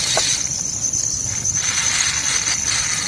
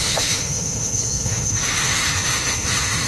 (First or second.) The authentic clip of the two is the first